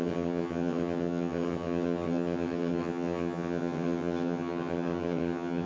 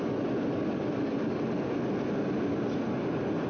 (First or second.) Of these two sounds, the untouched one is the second